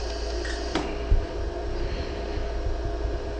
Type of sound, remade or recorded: recorded